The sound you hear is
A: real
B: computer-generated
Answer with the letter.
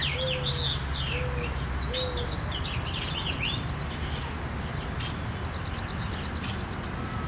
A